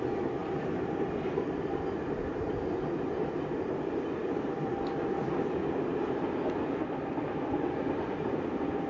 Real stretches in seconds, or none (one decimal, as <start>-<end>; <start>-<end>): 4.7-6.0